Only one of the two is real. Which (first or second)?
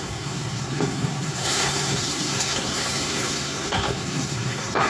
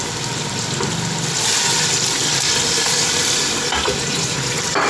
second